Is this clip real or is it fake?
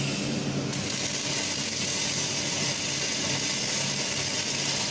real